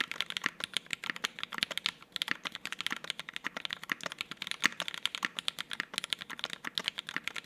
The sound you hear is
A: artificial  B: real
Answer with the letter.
B